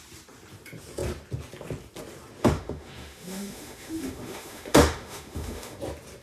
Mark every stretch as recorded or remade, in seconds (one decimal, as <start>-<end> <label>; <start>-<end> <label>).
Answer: 0.0-2.4 recorded; 2.4-5.8 remade; 5.8-6.2 recorded